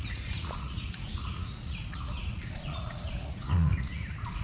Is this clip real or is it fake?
fake